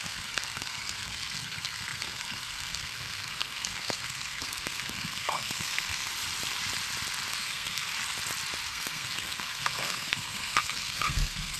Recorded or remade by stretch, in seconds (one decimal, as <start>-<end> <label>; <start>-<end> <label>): 0.0-6.1 remade; 6.1-7.3 recorded; 7.3-7.9 remade; 7.9-8.7 recorded; 8.7-11.6 remade